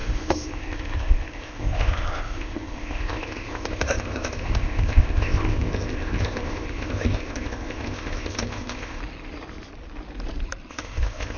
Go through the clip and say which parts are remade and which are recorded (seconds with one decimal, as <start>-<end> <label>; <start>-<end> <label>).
0.0-9.0 remade; 9.0-10.7 recorded; 10.7-11.4 remade